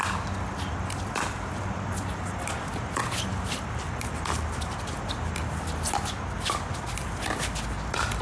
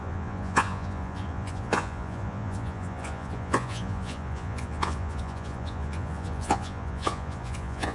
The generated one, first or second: second